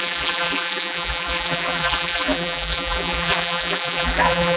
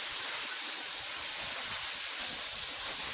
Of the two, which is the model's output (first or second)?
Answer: first